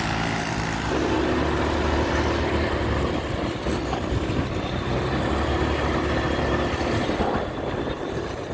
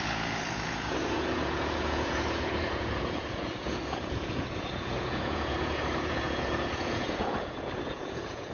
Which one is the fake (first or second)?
second